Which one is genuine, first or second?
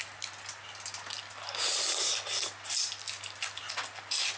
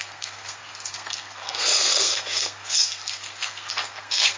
first